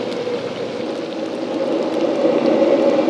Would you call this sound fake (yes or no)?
no